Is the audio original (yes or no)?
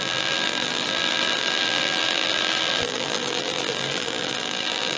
no